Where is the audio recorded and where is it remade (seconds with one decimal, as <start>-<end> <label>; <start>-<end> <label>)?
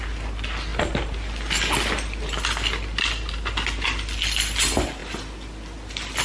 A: 0.0-6.2 recorded